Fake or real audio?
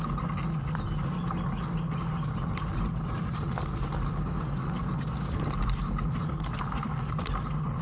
real